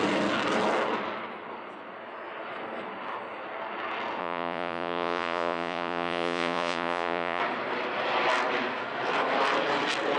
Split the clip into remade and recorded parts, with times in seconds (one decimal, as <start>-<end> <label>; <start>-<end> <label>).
0.0-4.2 recorded; 4.2-7.4 remade; 7.4-10.2 recorded